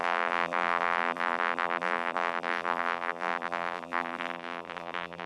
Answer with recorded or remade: remade